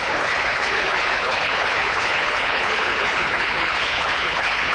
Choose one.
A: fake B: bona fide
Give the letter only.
A